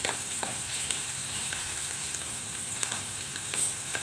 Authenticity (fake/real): fake